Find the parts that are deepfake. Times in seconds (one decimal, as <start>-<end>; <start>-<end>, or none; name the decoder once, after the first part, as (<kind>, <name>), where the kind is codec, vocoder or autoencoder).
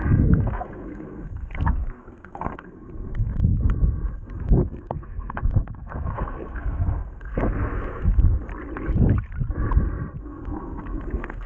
0.0-3.5 (codec, SNAC); 4.1-8.5; 10.2-11.5